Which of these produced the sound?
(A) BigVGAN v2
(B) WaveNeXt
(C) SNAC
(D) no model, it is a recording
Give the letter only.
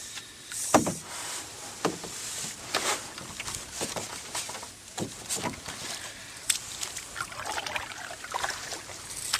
D